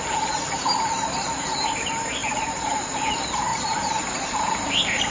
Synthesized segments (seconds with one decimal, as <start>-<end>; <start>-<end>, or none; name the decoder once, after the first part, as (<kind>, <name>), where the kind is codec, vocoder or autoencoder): 3.5-5.1 (vocoder, BigVGAN v2)

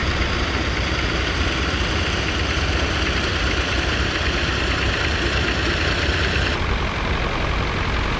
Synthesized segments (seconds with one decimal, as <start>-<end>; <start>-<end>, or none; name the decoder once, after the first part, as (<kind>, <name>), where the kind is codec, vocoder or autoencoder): 3.3-7.1 (vocoder, BigVGAN v2)

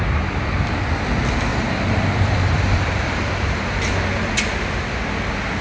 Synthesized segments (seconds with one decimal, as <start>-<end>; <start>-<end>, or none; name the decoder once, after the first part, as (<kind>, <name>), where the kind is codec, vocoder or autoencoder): 1.5-4.3 (vocoder, BigVGAN v2)

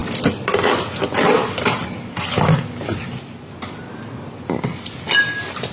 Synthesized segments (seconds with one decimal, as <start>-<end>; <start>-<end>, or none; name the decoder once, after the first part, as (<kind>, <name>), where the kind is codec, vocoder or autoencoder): none

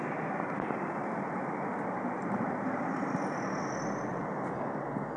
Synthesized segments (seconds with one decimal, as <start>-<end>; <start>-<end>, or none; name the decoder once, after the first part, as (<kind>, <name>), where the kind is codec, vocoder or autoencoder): 1.0-3.2 (vocoder, BigVGAN v2); 4.1-4.6

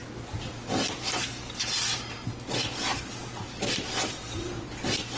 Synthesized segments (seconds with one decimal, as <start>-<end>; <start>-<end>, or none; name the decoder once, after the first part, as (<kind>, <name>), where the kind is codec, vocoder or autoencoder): 0.0-0.9 (vocoder, BigVGAN v2); 2.9-4.6

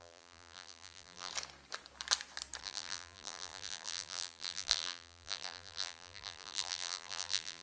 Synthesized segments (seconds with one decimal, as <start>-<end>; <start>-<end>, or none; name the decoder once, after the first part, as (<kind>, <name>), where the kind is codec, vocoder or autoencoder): 0.0-1.3 (vocoder, BigVGAN v2); 2.6-7.6